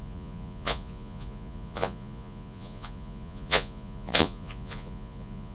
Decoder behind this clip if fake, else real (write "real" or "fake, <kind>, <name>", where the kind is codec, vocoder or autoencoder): fake, vocoder, Vocos